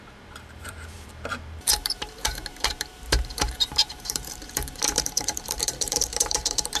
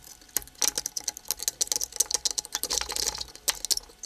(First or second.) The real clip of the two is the second